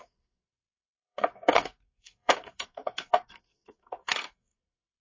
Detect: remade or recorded remade